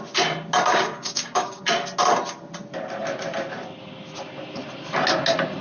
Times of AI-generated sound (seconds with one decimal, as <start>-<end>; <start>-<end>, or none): 0.7-1.6